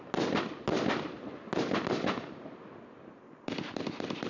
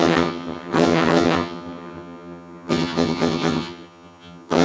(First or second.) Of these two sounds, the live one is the first